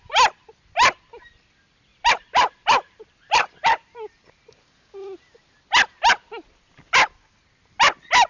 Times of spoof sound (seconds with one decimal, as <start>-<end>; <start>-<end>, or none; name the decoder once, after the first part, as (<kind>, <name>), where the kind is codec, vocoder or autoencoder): 1.9-5.6 (vocoder, BigVGAN v2)